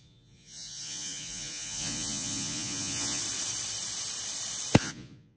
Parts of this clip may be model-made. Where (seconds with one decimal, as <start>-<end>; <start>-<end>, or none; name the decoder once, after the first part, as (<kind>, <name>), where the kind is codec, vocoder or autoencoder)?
0.0-3.2 (vocoder, Vocos); 4.8-5.4